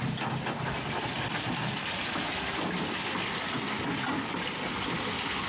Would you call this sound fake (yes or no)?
no